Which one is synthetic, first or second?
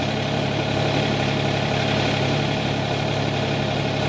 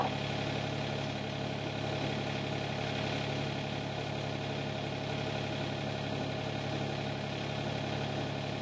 first